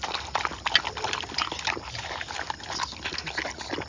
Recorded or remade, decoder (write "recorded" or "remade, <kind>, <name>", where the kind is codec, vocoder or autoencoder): recorded